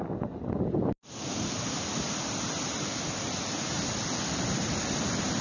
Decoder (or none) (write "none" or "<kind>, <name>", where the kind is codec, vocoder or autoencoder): none